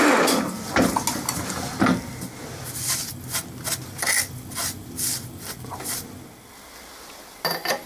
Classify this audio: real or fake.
real